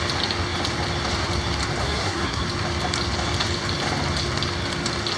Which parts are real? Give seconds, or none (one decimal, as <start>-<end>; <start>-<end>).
0.0-1.8; 2.4-5.2